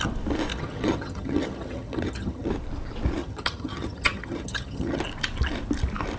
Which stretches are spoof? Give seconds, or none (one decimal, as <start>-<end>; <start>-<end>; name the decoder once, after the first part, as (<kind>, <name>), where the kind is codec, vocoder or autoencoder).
0.5-2.5 (vocoder, HiFi-GAN); 3.2-5.0